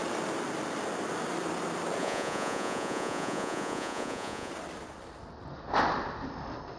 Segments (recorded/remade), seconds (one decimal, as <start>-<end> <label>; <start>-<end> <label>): 0.0-2.0 recorded; 2.0-4.5 remade; 4.5-6.8 recorded